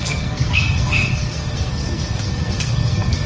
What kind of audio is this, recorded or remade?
remade